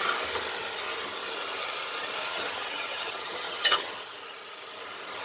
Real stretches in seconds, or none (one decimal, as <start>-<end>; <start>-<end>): 0.0-2.3; 3.9-5.2